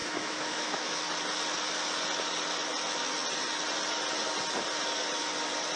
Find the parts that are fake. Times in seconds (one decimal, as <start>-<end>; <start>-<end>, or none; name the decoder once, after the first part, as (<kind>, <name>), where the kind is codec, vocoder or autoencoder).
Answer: 0.0-1.0 (autoencoder, DAC-VAE)